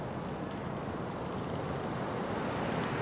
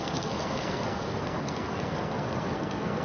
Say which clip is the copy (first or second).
second